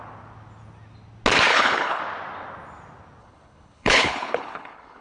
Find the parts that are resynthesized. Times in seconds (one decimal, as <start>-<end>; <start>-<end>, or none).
1.5-2.0; 3.2-5.0